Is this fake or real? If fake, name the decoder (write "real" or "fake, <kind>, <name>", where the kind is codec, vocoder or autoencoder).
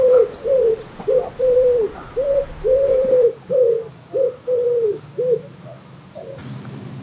fake, vocoder, BigVGAN v2